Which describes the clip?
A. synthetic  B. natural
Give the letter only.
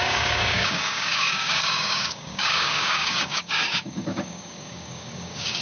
A